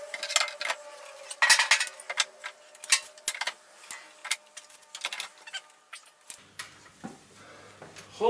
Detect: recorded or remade recorded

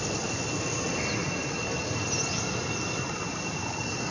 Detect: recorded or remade recorded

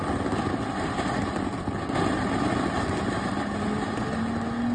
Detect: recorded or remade recorded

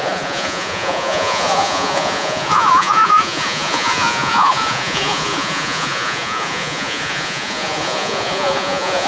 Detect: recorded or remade remade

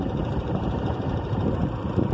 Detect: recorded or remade remade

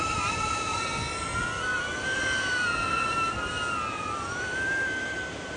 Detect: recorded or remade recorded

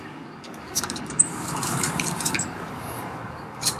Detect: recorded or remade remade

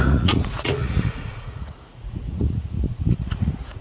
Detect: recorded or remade remade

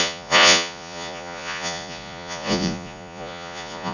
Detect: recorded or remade remade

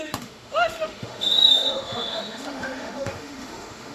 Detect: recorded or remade remade